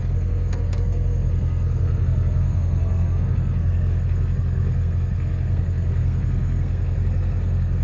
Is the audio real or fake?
fake